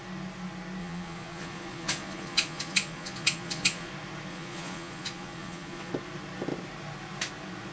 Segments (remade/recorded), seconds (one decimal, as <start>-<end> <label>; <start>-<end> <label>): 0.0-0.8 recorded; 0.8-3.9 remade; 3.9-4.3 recorded; 4.3-5.9 remade; 5.9-7.7 recorded